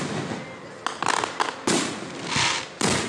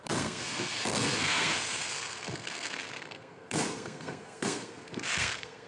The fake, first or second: second